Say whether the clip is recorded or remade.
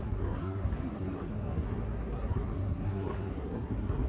remade